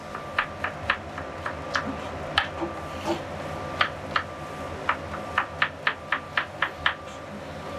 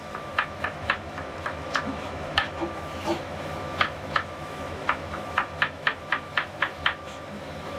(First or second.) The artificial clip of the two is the second